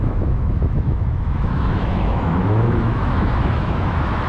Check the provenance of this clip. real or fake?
fake